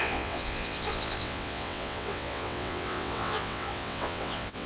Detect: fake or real fake